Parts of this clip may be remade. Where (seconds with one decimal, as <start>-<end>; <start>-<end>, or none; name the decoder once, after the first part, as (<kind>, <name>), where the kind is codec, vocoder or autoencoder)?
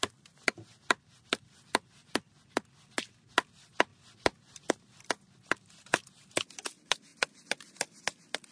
7.1-8.0 (vocoder, BigVGAN v2)